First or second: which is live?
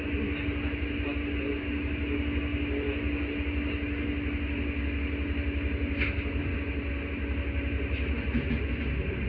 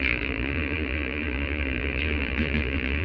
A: first